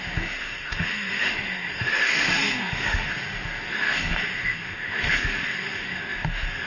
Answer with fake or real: fake